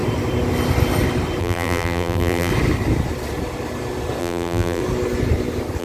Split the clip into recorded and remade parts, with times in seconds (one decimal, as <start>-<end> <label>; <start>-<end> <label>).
0.0-1.4 recorded; 1.4-2.5 remade; 2.5-4.2 recorded; 4.2-4.8 remade; 4.8-5.8 recorded